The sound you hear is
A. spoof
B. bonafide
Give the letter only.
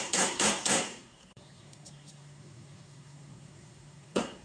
A